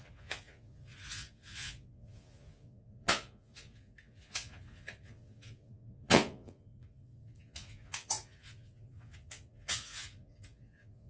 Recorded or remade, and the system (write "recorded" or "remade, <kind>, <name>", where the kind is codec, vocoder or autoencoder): remade, vocoder, Vocos